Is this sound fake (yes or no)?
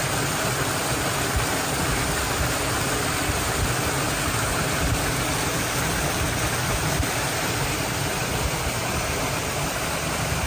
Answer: no